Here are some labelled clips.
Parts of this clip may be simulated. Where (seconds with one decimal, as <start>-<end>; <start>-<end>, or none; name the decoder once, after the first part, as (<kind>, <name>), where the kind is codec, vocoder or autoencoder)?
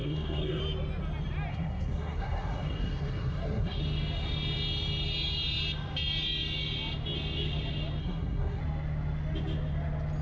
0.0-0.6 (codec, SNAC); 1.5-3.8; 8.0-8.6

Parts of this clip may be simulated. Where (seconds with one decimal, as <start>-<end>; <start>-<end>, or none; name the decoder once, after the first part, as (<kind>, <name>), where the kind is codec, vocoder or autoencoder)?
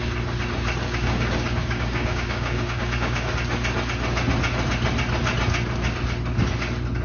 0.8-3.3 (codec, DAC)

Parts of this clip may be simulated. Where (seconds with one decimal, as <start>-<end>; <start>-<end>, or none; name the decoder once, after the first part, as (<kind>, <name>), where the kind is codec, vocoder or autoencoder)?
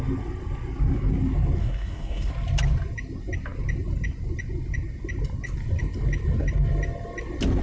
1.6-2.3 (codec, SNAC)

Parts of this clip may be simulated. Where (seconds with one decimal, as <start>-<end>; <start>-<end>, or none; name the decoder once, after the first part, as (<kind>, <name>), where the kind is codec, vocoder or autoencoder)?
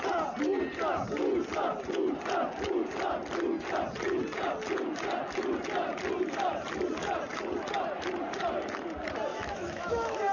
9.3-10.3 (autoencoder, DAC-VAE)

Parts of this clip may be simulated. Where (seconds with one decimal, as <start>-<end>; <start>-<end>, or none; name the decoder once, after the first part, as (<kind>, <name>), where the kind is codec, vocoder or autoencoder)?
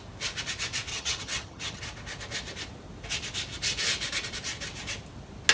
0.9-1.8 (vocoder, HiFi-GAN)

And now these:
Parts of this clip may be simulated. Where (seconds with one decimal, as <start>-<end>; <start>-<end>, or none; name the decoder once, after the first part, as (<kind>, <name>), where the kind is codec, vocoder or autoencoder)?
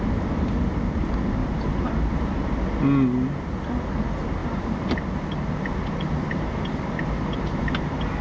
1.4-2.5 (vocoder, BigVGAN v2); 4.4-6.1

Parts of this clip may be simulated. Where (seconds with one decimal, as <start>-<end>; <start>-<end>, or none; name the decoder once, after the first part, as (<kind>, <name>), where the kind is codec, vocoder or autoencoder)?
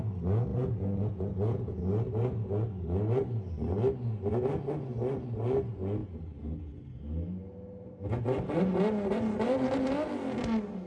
0.5-1.8 (vocoder, Vocos); 6.0-7.0